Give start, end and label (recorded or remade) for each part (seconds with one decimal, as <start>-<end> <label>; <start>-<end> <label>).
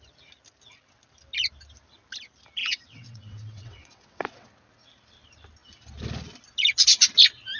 0.0-2.6 recorded; 2.6-4.5 remade; 4.5-7.6 recorded